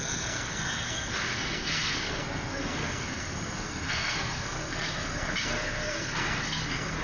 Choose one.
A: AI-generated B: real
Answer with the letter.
A